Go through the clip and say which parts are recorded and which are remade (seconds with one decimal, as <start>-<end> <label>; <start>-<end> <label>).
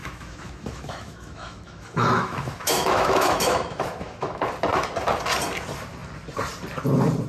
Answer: 0.0-4.4 remade; 4.4-7.3 recorded